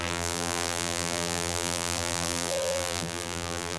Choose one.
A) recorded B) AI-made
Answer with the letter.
B